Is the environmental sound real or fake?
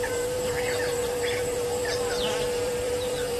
fake